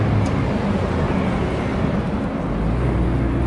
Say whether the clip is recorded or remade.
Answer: recorded